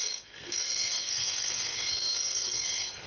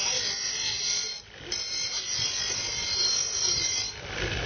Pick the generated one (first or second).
first